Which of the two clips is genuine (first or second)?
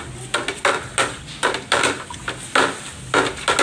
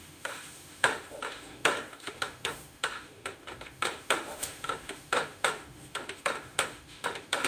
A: first